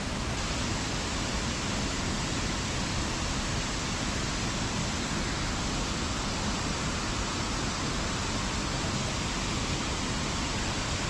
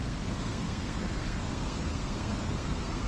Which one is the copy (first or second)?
second